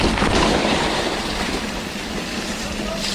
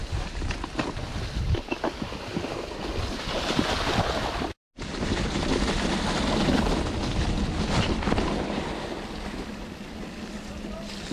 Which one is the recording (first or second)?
second